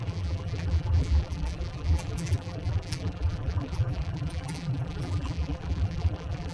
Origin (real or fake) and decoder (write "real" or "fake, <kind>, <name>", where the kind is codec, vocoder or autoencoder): fake, vocoder, BigVGAN v2